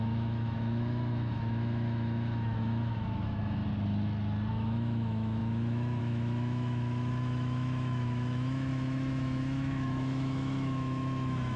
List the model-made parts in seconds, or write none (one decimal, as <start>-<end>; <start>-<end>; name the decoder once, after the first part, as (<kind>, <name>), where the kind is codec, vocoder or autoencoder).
0.0-3.6 (autoencoder, DAC-VAE); 4.5-11.6